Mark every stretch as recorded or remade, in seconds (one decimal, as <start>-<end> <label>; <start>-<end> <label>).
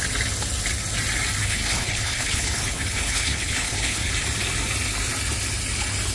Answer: 0.0-1.4 recorded; 1.4-4.1 remade; 4.1-6.1 recorded